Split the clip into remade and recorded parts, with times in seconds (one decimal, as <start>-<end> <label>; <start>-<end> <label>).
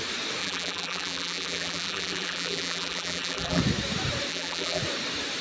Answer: 0.0-0.4 recorded; 0.4-3.6 remade; 3.6-4.3 recorded; 4.3-4.8 remade; 4.8-5.4 recorded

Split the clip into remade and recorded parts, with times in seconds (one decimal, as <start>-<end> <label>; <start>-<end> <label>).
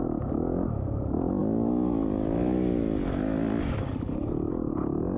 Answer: 0.0-5.2 recorded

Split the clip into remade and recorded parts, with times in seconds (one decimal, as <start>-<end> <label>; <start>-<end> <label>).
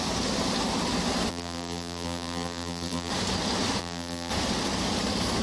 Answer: 0.0-1.3 recorded; 1.3-3.1 remade; 3.1-3.8 recorded; 3.8-4.3 remade; 4.3-5.4 recorded